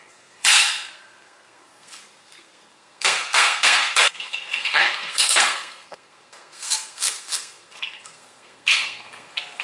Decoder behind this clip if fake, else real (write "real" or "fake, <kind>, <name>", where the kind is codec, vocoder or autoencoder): fake, codec, SNAC